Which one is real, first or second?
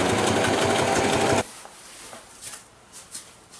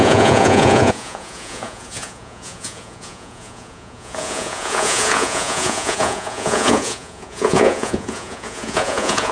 first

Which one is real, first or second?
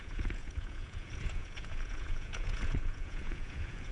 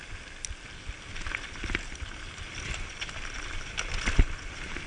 second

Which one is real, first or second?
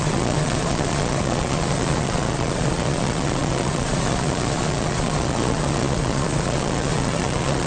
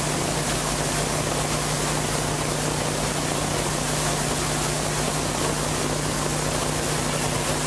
second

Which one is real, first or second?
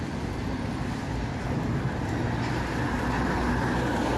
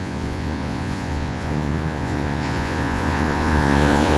first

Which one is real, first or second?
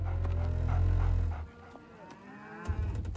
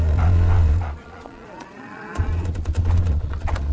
first